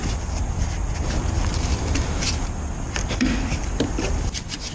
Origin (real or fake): real